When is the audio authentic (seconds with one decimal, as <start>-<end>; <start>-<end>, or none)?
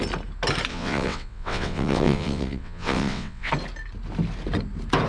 0.0-0.7; 3.5-5.1